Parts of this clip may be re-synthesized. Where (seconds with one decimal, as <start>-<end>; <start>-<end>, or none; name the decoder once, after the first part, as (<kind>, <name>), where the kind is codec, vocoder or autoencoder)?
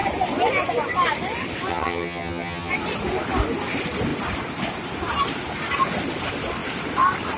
1.7-2.7 (vocoder, HiFi-GAN)